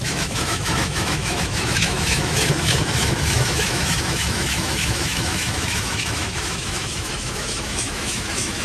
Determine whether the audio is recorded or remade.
remade